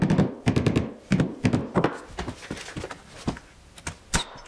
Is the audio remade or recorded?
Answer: recorded